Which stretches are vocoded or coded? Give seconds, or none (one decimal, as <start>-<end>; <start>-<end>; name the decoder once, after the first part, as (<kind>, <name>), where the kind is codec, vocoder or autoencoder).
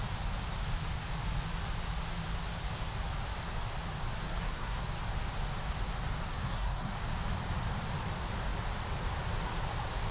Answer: 4.2-4.8 (codec, SNAC); 6.3-6.9